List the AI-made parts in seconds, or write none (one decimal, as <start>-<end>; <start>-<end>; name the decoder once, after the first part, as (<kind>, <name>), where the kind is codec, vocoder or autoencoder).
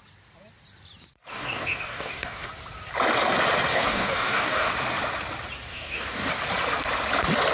1.3-2.5 (codec, DAC); 3.7-4.7; 5.7-6.3